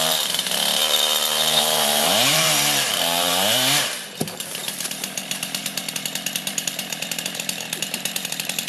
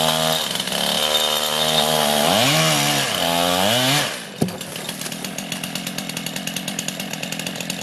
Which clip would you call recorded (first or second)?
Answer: second